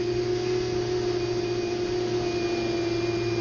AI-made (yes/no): no